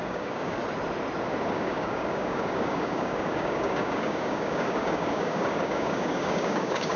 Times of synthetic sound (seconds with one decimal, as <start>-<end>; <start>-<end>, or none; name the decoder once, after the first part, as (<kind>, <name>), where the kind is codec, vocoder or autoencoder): 0.0-0.6 (codec, DAC); 1.5-7.0